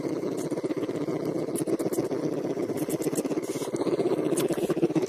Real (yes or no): yes